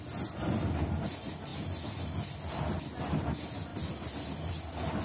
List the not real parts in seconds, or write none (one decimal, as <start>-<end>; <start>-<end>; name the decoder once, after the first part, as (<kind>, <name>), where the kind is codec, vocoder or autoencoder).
none